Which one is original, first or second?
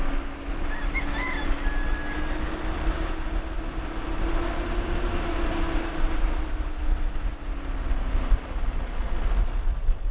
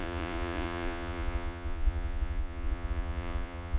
first